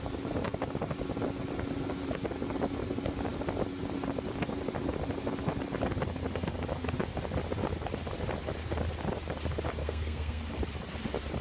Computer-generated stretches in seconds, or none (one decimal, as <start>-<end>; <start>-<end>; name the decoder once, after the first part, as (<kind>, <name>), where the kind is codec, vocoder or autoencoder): 9.8-10.4 (codec, SNAC)